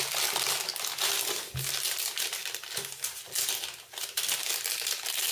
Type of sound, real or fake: real